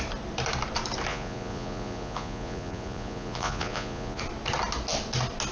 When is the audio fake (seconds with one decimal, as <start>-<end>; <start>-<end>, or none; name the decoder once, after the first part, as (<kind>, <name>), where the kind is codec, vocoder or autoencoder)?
1.1-4.2 (vocoder, Vocos)